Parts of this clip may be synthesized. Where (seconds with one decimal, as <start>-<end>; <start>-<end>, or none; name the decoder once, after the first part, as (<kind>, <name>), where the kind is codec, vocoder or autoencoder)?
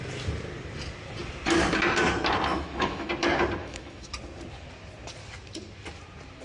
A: 2.5-3.1 (autoencoder, DAC-VAE); 3.6-4.1